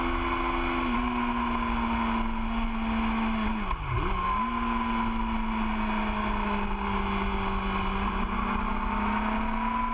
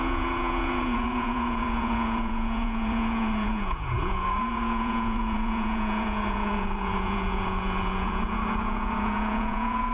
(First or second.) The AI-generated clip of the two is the second